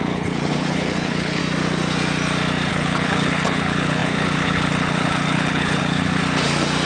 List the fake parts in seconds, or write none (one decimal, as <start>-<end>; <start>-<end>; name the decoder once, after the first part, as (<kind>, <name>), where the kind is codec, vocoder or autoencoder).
0.0-1.4 (codec, HILCodec); 2.7-6.2